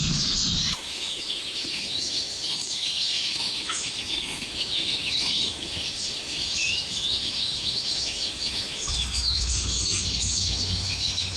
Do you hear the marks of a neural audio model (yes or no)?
yes